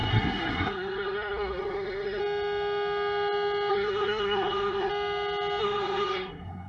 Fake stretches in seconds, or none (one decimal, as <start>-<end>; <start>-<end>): 0.0-2.2; 3.7-4.9; 5.6-6.7